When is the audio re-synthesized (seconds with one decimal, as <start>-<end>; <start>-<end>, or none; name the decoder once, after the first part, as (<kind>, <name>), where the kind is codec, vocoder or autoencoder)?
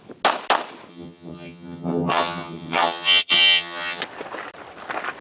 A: 0.9-4.0 (vocoder, HiFi-GAN)